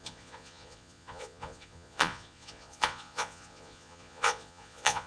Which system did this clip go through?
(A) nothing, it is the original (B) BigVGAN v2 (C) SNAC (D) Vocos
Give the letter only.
D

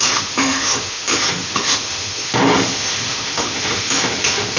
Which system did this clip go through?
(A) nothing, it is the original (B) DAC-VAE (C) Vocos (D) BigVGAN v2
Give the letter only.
B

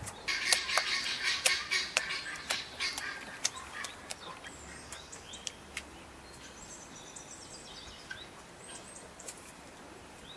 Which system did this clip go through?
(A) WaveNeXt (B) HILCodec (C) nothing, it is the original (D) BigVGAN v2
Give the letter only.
D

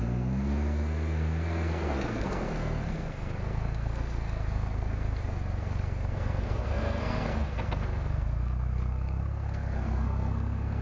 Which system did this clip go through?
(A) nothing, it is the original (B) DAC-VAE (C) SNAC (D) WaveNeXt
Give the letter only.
C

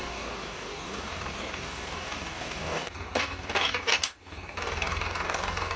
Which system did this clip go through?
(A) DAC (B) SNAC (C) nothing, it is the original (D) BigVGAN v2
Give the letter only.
A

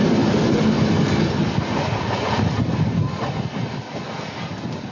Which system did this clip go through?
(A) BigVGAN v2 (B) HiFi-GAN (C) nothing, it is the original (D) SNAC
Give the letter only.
C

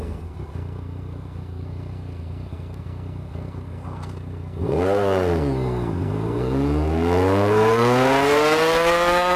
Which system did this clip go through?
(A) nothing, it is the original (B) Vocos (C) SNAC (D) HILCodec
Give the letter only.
C